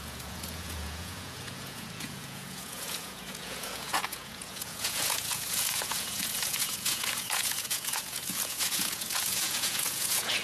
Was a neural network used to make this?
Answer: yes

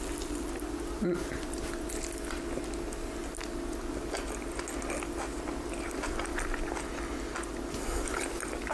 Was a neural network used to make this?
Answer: no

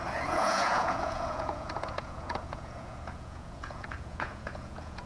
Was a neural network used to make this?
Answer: yes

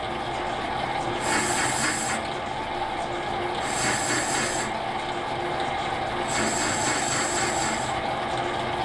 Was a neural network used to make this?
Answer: no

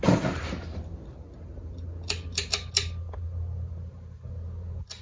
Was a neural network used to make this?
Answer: no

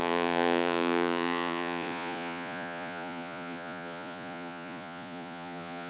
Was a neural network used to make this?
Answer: yes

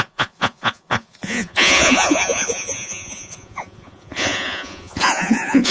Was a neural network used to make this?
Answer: yes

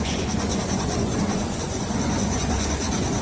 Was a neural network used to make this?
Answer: yes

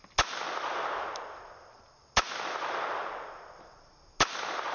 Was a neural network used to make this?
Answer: no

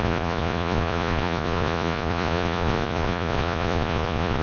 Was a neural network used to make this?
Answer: yes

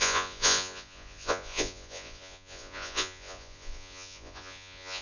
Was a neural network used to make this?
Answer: yes